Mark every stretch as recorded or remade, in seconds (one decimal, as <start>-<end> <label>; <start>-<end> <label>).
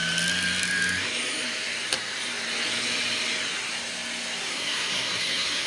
0.0-4.5 recorded; 4.5-5.7 remade